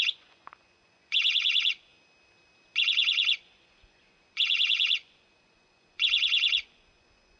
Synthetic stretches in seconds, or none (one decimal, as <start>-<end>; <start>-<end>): 0.0-1.9; 2.8-7.4